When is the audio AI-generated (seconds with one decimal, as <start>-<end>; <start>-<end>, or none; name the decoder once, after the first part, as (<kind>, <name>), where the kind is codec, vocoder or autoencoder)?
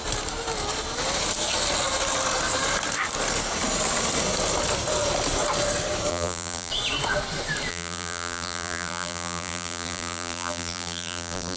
6.1-6.7 (vocoder, BigVGAN v2); 7.7-11.6